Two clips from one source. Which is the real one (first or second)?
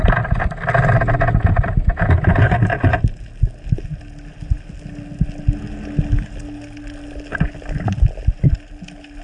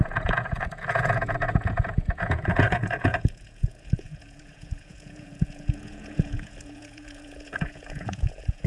first